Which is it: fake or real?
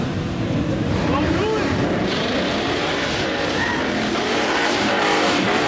fake